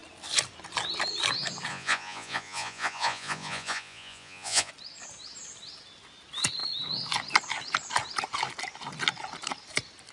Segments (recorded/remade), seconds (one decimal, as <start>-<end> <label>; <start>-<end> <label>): 0.0-1.7 recorded; 1.7-4.7 remade; 4.7-10.1 recorded